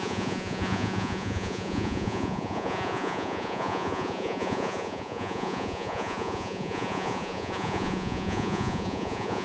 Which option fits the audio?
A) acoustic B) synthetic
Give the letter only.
B